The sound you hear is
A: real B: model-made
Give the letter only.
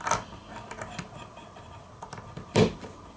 B